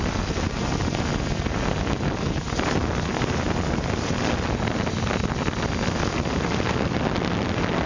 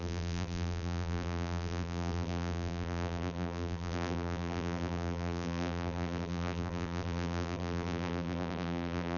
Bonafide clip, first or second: first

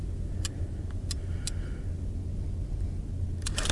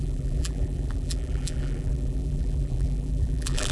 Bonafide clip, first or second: first